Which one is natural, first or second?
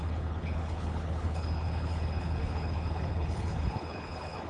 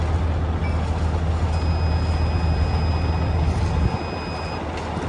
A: second